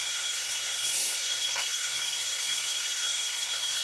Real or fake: fake